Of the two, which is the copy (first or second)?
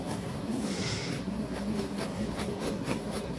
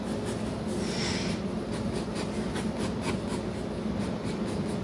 first